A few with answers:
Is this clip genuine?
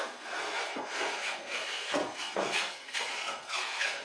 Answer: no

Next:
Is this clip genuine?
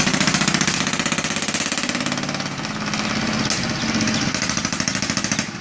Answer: yes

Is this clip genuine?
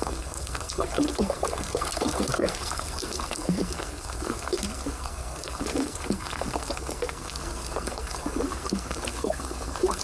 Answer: no